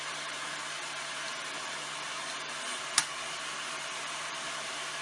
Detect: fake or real real